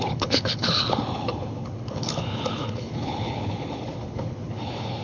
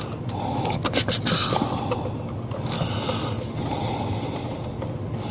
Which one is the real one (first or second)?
second